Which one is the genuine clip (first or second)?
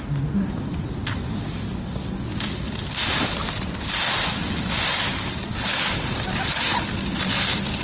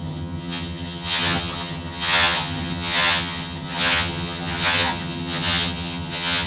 first